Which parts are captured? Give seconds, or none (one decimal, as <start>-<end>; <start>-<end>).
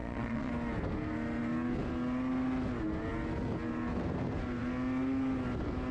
0.5-5.9